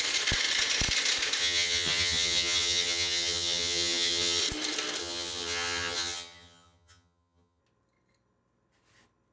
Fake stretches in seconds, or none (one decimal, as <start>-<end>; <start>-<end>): 1.4-4.4; 5.0-7.6